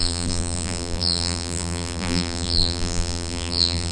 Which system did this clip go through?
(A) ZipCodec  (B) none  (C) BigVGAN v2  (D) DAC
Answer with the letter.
C